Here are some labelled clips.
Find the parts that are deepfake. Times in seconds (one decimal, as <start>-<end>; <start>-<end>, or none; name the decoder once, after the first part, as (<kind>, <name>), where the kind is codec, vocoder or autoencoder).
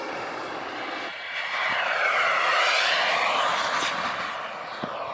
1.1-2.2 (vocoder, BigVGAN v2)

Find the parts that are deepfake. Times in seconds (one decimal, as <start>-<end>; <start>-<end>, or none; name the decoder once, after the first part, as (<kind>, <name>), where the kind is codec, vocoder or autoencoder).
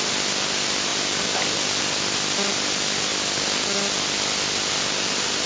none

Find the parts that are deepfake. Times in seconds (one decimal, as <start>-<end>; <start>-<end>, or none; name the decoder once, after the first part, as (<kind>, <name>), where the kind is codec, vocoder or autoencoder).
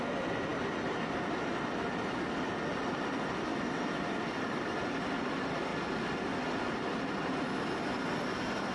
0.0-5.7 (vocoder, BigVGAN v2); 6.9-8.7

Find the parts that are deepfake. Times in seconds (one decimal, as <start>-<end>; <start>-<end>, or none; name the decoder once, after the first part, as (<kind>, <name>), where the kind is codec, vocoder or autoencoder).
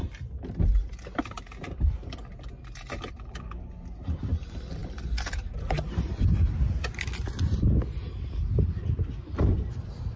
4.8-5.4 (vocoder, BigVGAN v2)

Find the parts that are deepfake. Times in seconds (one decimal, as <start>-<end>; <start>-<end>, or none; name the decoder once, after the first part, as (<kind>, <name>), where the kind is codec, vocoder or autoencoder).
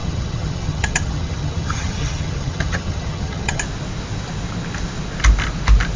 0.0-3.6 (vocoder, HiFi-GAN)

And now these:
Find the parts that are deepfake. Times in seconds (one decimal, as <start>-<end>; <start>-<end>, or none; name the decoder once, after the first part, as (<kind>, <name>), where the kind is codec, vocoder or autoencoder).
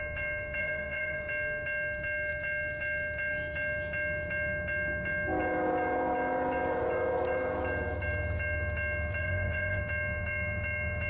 0.6-1.2 (vocoder, Vocos); 9.2-9.8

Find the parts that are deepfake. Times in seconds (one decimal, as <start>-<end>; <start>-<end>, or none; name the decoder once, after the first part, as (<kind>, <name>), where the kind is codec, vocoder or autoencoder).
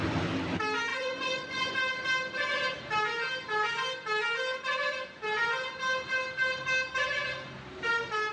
0.9-1.7 (vocoder, Vocos)